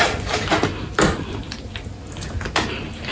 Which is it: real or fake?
real